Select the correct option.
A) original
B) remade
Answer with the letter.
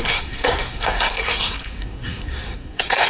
B